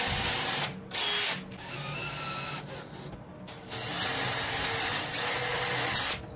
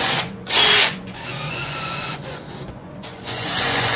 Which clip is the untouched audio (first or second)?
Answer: first